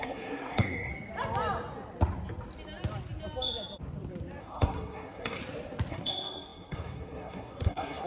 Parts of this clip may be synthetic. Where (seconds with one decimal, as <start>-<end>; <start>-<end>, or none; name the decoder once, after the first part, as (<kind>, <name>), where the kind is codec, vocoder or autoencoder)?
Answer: 0.0-0.9 (codec, SNAC); 4.4-5.4; 5.9-8.1